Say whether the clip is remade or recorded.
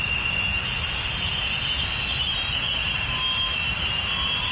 recorded